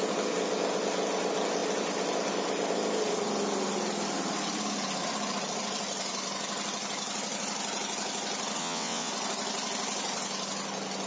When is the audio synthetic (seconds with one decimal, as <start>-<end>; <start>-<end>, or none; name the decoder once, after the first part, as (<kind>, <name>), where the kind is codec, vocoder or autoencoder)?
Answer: 8.6-9.1 (vocoder, WaveNeXt)